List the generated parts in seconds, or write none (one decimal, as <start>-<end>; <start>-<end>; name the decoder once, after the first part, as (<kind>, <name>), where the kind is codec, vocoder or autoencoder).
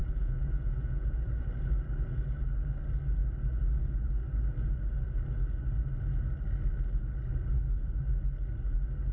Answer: 0.0-1.4 (vocoder, Vocos)